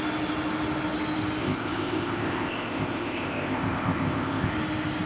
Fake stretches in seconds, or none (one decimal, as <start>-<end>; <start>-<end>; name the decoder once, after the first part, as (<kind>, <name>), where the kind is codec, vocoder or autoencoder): 1.4-4.5 (codec, ZipCodec)